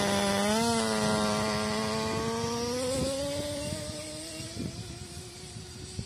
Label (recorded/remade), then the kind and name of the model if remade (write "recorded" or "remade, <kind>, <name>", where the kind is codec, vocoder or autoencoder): recorded